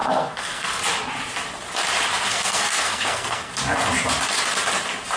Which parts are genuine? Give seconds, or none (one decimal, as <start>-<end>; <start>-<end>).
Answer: 0.8-2.3; 3.5-5.2